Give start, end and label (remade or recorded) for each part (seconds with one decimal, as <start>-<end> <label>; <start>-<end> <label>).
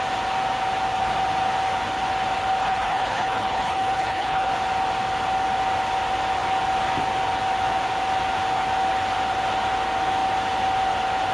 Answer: 0.0-2.6 recorded; 2.6-4.5 remade; 4.5-11.3 recorded